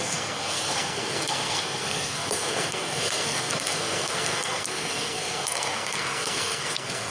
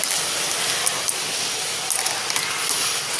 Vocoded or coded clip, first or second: first